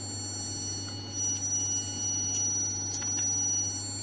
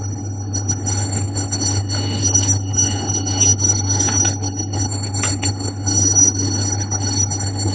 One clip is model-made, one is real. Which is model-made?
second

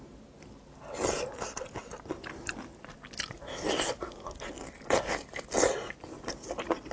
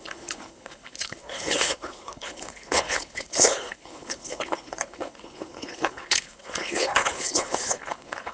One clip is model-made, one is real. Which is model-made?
second